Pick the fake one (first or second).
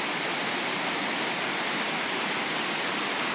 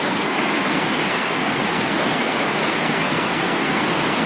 second